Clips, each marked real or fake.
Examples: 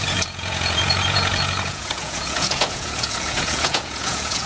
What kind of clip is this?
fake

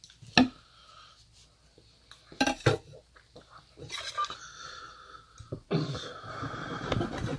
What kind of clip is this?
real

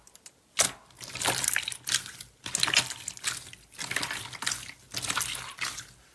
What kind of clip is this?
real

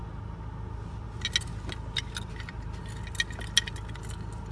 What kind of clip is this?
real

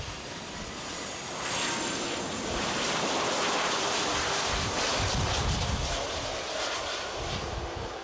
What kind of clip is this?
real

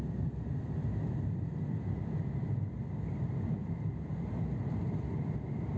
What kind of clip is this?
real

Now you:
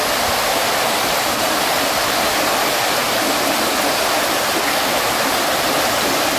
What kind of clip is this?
fake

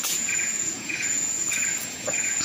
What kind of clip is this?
fake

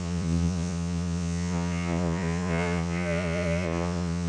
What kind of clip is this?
fake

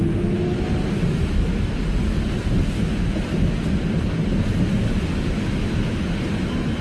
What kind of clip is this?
real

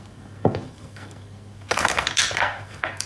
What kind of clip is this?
fake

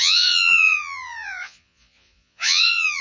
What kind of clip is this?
fake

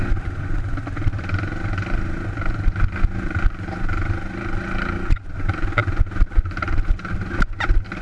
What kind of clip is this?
real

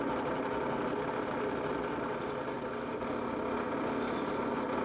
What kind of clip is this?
real